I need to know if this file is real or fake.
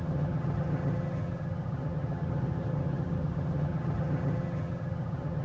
fake